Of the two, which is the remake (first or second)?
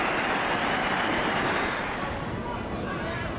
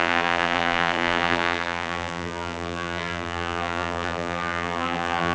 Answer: second